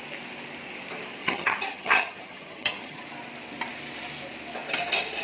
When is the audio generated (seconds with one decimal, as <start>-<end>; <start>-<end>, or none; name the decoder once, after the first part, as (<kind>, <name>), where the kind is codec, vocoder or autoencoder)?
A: 1.2-3.0 (vocoder, HiFi-GAN)